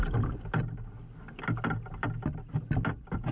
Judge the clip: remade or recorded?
recorded